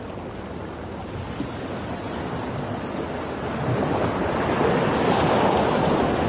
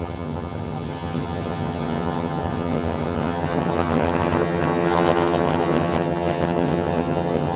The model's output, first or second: second